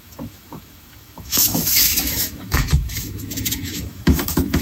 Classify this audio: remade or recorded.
remade